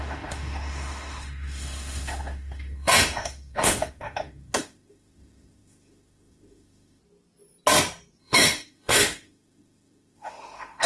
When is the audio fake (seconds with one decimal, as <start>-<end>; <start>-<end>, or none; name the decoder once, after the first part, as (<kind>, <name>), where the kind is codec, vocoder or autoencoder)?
0.0-7.0 (autoencoder, DAC-VAE); 8.2-10.9